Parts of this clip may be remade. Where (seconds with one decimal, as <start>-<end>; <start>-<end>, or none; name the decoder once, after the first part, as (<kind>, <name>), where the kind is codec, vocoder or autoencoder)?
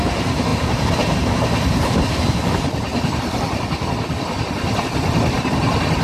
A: 0.0-2.9 (vocoder, BigVGAN v2)